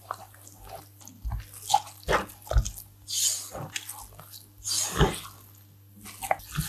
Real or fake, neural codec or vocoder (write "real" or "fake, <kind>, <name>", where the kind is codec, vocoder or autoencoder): real